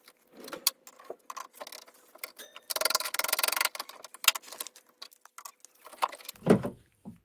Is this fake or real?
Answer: real